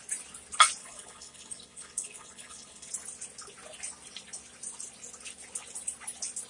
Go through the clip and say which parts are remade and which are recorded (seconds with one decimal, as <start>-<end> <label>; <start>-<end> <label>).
0.0-0.8 recorded; 0.8-2.9 remade; 2.9-6.5 recorded